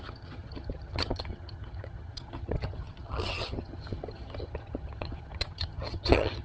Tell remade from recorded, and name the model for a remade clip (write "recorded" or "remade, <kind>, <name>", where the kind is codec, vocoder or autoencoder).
remade, vocoder, HiFi-GAN